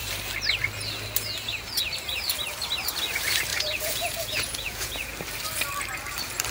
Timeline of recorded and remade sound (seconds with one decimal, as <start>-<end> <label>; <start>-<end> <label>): 0.0-3.5 recorded; 3.5-5.1 remade; 5.1-6.5 recorded